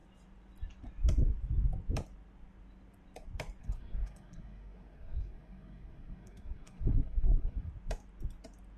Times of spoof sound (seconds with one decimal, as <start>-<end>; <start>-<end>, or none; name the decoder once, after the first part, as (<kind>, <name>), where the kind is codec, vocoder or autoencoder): 3.6-7.7 (codec, SNAC)